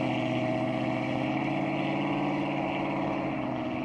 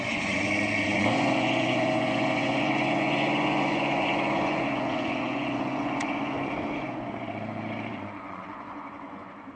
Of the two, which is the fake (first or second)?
second